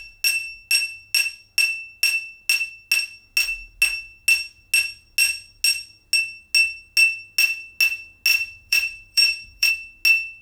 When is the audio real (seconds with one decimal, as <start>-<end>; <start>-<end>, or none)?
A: 0.0-8.3; 9.7-10.4